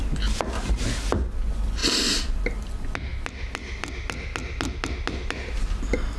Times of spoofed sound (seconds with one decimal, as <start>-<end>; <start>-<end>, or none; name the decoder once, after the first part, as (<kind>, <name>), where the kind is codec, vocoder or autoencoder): none